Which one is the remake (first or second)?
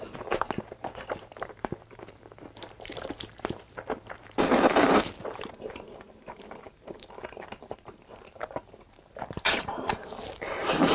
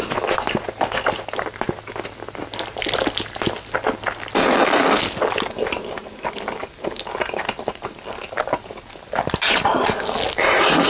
first